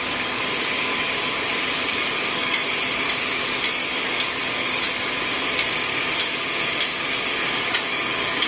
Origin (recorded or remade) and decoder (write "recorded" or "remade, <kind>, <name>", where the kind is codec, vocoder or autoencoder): remade, codec, DAC